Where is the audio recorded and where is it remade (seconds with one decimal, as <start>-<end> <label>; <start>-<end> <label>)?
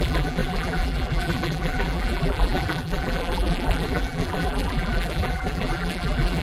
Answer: 0.0-6.4 remade